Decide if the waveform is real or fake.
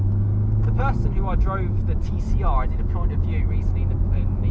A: real